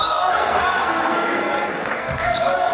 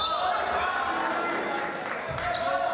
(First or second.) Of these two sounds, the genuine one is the second